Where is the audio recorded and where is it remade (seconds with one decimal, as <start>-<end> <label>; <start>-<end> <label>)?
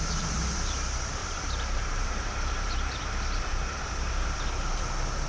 0.0-1.2 recorded; 1.2-4.4 remade; 4.4-5.3 recorded